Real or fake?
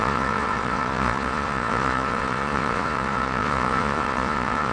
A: fake